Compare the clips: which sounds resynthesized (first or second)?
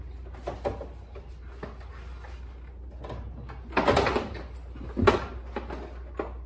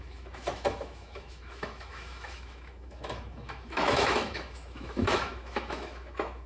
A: second